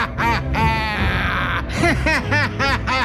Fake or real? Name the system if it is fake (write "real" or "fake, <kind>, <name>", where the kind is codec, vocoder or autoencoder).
real